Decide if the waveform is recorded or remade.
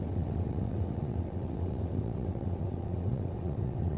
remade